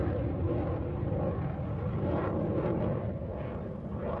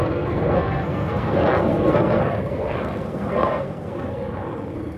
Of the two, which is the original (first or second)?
first